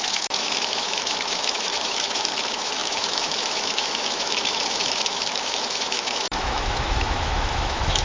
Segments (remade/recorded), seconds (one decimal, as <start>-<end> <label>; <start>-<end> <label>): 0.0-8.0 remade